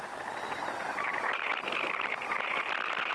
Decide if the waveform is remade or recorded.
remade